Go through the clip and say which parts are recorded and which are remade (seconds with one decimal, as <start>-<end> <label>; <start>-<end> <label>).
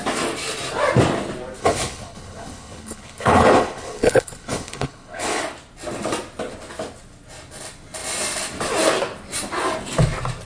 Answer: 0.0-1.6 recorded; 1.6-5.4 remade; 5.4-10.5 recorded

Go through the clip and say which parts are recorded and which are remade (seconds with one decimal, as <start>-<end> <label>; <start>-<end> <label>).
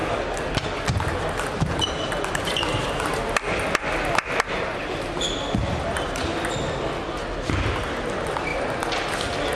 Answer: 0.0-9.6 recorded